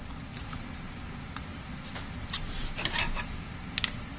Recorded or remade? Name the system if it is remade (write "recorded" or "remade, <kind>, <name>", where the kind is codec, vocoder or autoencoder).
recorded